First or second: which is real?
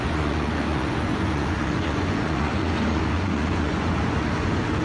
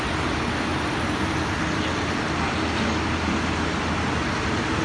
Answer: second